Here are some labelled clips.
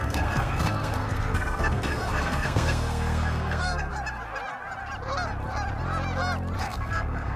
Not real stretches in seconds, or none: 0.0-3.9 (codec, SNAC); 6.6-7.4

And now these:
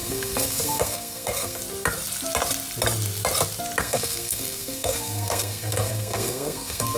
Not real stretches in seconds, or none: 0.0-1.6 (codec, SNAC); 3.8-7.0

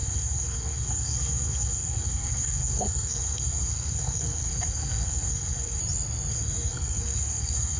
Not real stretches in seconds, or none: 0.0-5.8 (codec, SNAC); 6.3-7.8